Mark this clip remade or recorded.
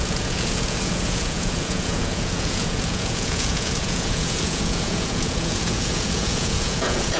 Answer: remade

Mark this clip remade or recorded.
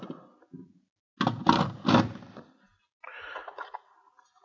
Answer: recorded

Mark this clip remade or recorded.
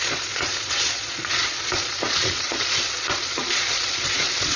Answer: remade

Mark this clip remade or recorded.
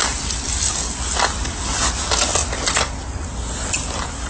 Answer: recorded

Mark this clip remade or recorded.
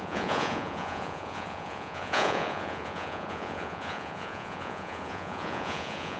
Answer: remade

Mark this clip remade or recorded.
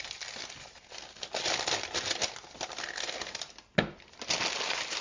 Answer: recorded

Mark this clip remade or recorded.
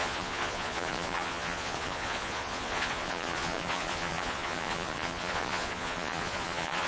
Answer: remade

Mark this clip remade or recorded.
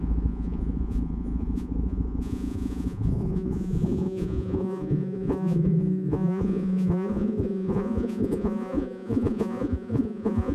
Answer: remade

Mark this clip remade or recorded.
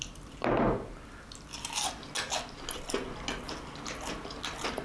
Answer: recorded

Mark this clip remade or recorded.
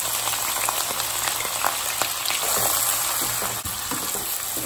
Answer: recorded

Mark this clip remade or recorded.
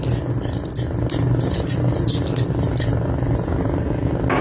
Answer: recorded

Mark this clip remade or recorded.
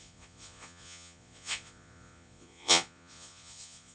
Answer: remade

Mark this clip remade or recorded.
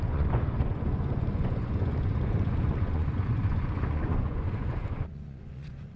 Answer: remade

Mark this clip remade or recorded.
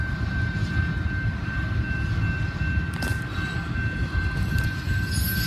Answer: recorded